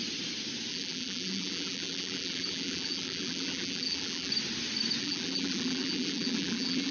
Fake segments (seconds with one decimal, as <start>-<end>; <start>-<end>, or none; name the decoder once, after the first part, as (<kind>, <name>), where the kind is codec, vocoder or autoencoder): 0.7-4.3 (vocoder, BigVGAN v2); 5.0-6.9